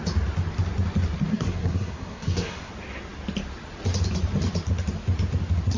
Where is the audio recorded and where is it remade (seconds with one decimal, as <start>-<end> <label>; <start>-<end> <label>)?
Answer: 0.0-1.3 recorded; 1.3-2.7 remade; 2.7-5.8 recorded